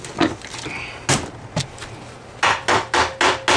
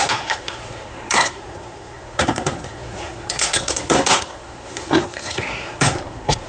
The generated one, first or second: second